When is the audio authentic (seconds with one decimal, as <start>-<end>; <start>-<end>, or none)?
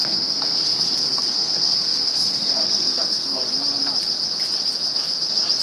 3.4-5.6